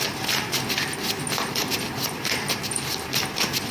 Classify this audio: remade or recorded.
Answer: recorded